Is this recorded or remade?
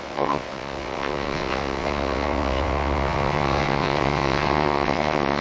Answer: remade